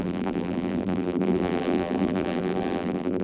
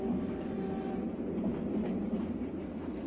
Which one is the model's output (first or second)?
first